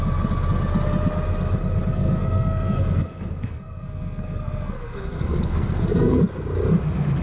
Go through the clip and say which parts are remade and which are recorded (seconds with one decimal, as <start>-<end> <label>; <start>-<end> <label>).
0.0-1.9 recorded; 1.9-6.2 remade; 6.2-7.2 recorded